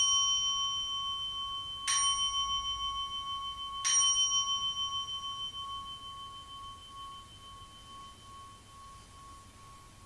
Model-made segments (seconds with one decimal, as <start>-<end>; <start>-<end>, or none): none